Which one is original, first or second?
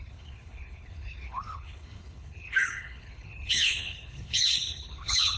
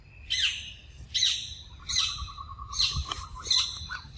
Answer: second